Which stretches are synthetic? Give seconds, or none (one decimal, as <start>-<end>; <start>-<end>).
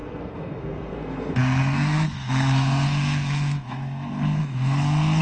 0.0-5.2